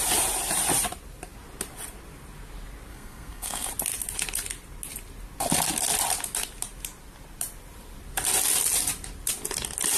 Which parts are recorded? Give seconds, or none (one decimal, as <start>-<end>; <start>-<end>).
0.0-2.9; 3.7-10.0